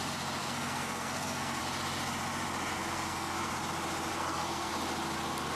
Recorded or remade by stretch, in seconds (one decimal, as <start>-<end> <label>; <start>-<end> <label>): 0.0-0.4 recorded; 0.4-1.6 remade; 1.6-2.7 recorded; 2.7-3.5 remade; 3.5-4.1 recorded; 4.1-4.7 remade; 4.7-5.6 recorded